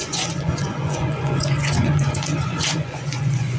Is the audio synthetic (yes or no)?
yes